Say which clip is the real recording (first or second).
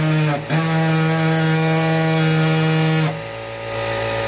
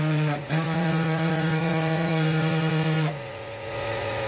first